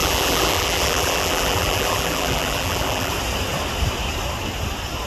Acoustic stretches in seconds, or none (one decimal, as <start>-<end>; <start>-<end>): 3.1-5.1